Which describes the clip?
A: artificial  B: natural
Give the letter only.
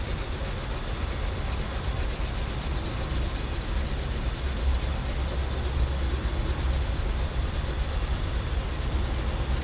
B